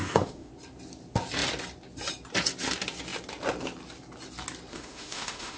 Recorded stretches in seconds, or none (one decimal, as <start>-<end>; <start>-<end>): 0.5-4.7